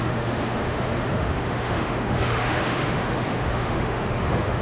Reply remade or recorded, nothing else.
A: remade